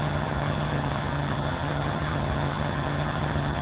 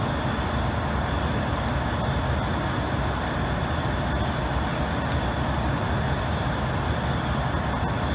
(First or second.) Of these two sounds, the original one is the second